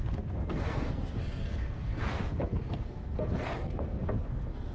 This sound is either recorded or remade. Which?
remade